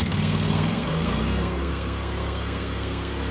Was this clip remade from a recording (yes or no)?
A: yes